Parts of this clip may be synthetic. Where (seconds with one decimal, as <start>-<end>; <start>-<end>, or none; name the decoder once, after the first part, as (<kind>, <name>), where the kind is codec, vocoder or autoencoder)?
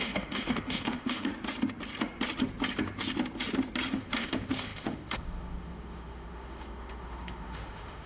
0.0-1.3 (autoencoder, DAC-VAE); 3.9-8.1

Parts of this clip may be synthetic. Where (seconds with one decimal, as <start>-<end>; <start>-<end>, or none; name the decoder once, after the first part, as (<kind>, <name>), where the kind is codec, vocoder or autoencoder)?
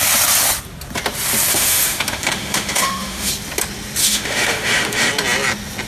1.5-3.3 (autoencoder, DAC-VAE); 4.0-5.1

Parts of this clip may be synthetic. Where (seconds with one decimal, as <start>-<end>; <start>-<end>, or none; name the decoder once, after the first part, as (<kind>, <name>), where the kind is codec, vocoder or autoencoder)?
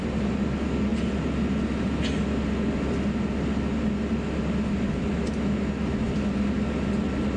none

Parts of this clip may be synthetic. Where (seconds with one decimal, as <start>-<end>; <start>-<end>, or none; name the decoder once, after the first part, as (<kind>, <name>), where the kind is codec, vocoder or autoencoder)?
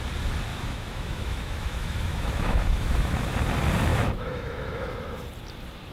0.5-3.3 (autoencoder, DAC-VAE); 3.9-4.9